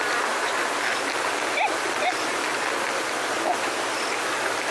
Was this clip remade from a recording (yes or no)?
no